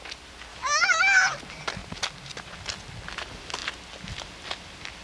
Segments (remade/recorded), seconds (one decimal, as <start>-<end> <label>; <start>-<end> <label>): 0.0-0.5 recorded; 0.5-1.0 remade; 1.0-5.0 recorded